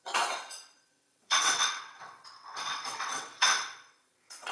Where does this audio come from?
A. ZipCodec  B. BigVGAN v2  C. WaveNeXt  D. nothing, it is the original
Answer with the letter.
C